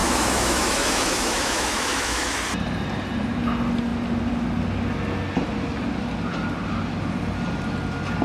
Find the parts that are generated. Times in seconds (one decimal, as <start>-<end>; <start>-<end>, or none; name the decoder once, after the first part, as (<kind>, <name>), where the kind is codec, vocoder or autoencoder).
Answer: 0.0-2.4 (autoencoder, DAC-VAE)